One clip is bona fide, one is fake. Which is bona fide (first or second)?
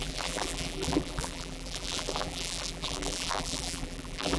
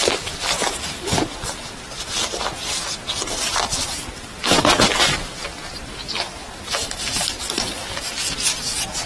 second